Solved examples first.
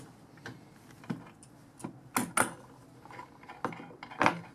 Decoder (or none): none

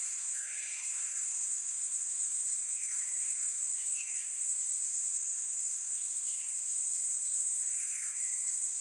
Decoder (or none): codec, SNAC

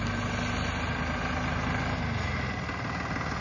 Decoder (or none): none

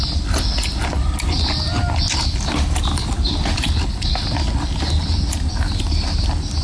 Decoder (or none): none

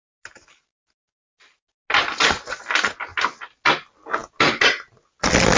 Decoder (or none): none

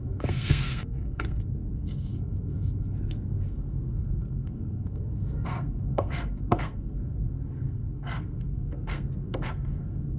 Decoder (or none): codec, SNAC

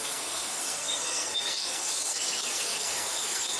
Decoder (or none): codec, SNAC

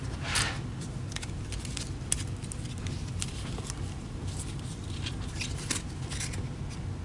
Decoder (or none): none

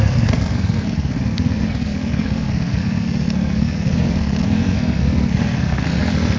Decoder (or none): codec, SNAC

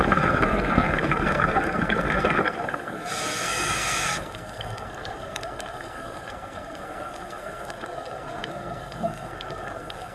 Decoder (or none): codec, SNAC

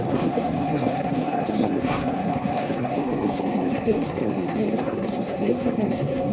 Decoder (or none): codec, SNAC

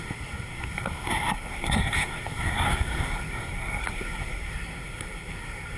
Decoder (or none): codec, SNAC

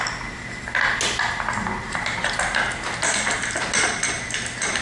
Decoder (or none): none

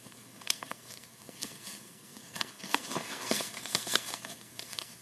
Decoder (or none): codec, SNAC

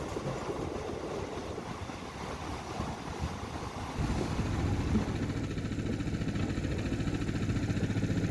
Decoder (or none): none